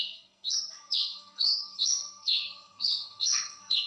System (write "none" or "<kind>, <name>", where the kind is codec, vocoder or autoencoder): codec, SNAC